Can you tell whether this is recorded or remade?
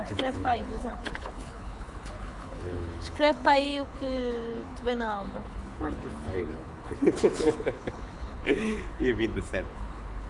remade